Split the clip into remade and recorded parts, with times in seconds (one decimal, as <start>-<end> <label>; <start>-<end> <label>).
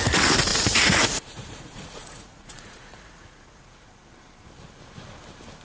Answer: 0.0-0.5 recorded; 0.5-3.9 remade; 3.9-5.6 recorded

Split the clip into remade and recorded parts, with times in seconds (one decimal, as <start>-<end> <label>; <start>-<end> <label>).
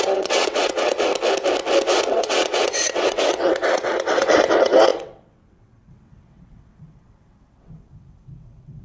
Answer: 0.0-1.1 remade; 1.1-2.1 recorded; 2.1-8.8 remade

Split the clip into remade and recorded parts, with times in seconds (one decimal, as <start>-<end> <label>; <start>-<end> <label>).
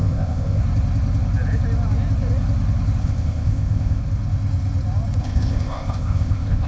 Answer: 0.0-0.6 remade; 0.6-3.0 recorded; 3.0-4.0 remade; 4.0-5.2 recorded; 5.2-6.7 remade